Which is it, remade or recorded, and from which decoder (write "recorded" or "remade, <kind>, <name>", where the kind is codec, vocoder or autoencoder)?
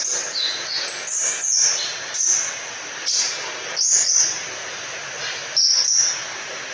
recorded